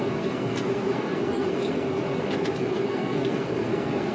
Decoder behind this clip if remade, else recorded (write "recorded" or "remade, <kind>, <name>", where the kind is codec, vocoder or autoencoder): remade, codec, SNAC